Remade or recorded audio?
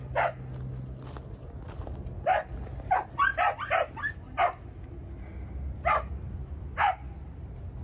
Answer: recorded